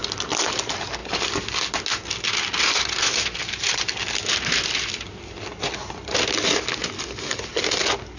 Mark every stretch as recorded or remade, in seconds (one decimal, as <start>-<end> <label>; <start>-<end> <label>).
0.0-8.2 recorded